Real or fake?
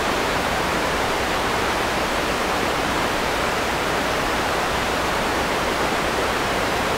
fake